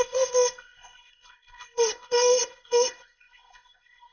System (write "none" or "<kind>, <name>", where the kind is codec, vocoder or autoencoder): codec, ZipCodec